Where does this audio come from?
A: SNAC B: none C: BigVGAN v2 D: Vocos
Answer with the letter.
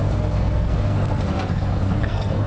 A